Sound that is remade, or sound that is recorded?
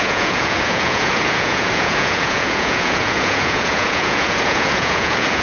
remade